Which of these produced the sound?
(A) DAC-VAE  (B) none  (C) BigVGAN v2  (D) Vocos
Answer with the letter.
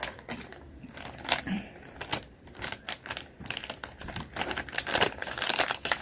C